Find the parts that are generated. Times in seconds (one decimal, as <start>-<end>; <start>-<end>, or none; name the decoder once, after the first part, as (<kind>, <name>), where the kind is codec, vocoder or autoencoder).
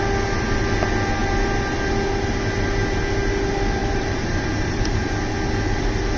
3.8-5.1 (vocoder, BigVGAN v2)